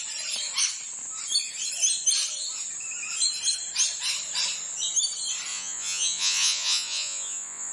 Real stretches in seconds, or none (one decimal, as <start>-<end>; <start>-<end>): 0.0-5.5